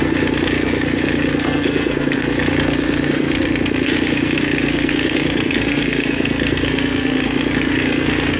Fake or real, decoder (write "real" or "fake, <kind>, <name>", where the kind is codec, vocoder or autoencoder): fake, codec, SNAC